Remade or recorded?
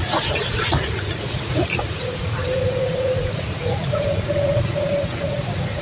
remade